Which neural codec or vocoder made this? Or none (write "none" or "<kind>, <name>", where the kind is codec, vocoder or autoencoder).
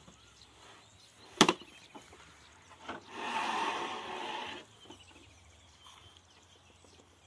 none